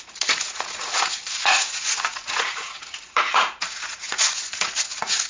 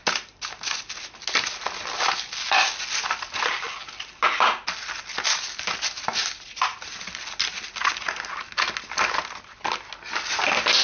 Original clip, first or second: second